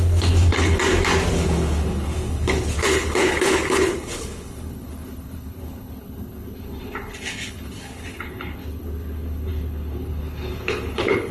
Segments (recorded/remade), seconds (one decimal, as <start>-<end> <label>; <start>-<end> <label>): 0.0-0.8 remade; 0.8-1.3 recorded; 1.3-11.3 remade